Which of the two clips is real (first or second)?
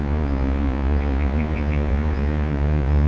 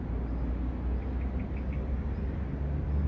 second